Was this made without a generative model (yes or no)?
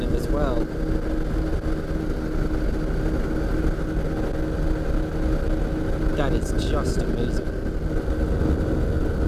yes